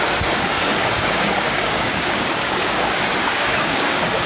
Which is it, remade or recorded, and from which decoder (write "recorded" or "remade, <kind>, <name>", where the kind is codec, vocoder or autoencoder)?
remade, codec, DAC